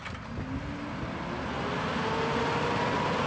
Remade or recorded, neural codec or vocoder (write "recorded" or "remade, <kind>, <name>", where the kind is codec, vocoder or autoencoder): recorded